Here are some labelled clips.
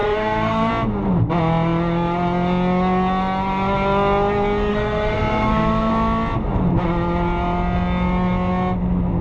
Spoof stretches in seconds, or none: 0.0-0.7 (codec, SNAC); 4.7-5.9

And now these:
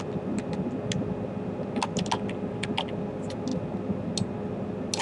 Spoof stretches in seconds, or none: none

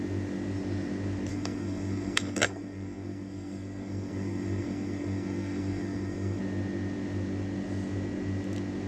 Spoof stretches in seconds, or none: 1.3-6.4 (codec, SNAC)

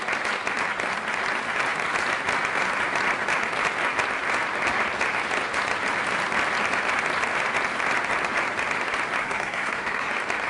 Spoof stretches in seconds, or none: 9.2-10.1 (codec, SNAC)

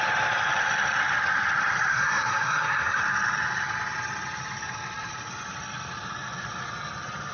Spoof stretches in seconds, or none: 1.9-3.0 (codec, SNAC)